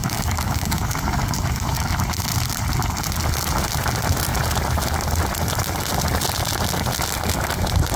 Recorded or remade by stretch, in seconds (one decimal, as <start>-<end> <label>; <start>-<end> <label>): 0.0-1.9 remade; 1.9-8.0 recorded